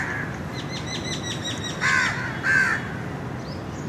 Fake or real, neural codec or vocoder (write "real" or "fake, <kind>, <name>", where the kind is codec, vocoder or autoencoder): real